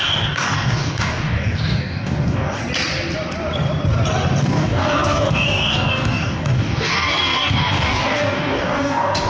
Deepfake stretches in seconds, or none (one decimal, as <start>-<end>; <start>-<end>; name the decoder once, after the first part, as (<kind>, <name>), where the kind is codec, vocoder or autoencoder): 0.0-2.6 (codec, DAC); 4.4-9.3